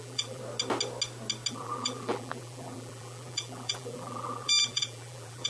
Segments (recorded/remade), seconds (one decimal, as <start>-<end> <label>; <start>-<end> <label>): 0.0-0.4 remade; 0.4-1.5 recorded; 1.5-5.5 remade